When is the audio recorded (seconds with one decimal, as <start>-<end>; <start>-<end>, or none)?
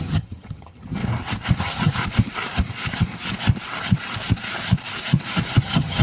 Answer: 1.0-1.6; 2.0-5.6